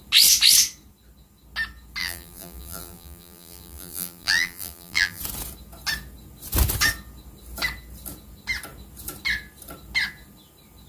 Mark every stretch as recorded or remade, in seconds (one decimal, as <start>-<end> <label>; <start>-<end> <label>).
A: 0.0-2.0 recorded; 2.0-5.2 remade; 5.2-10.9 recorded